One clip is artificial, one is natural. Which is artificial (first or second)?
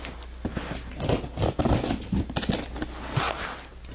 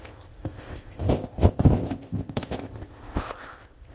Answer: second